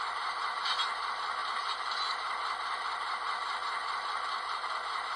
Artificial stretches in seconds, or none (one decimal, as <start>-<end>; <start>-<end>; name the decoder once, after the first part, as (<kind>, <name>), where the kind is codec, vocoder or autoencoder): none